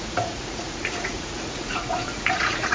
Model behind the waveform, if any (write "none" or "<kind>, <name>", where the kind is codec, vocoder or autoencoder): vocoder, Vocos